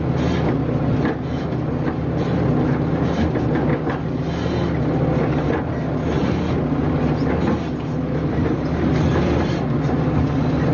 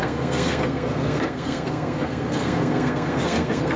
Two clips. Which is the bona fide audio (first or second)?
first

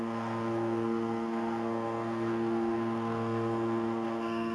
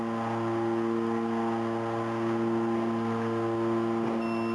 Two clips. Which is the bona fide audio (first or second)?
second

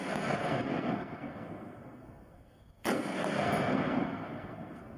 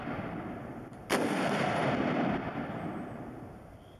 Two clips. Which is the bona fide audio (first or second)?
second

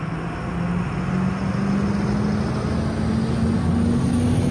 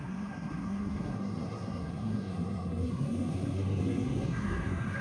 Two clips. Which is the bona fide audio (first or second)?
first